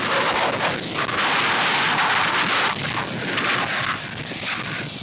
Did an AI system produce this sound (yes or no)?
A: no